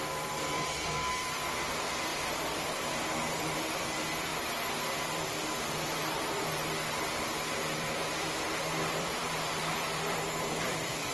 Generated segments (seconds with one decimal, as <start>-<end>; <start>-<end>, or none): 0.0-4.3; 4.8-11.1